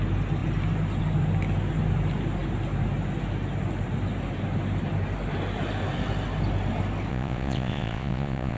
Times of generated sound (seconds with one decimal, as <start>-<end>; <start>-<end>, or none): 7.1-8.6